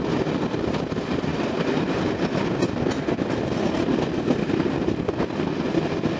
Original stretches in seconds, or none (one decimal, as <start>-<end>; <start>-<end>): 0.0-6.2